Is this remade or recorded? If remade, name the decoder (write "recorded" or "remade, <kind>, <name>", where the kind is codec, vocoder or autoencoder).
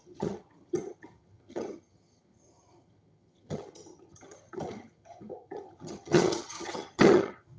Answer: remade, vocoder, HiFi-GAN